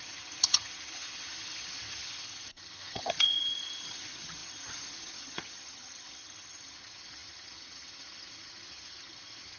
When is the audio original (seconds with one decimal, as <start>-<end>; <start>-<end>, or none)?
none